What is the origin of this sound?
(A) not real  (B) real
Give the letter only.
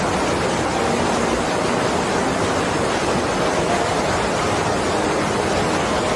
B